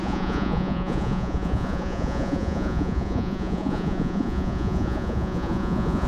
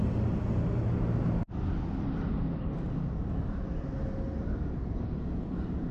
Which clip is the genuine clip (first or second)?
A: second